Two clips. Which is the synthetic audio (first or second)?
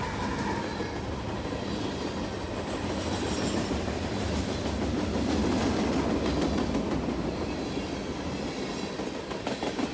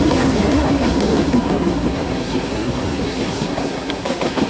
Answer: second